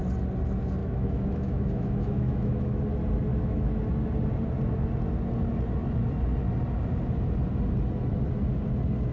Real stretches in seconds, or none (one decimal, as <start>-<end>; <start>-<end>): 0.0-0.8; 2.8-3.3; 3.8-9.1